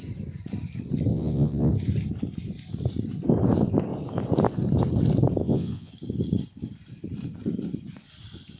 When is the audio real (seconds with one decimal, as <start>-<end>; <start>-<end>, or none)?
0.0-1.1; 1.7-5.4; 5.9-8.6